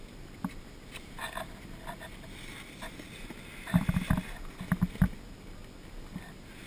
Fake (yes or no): no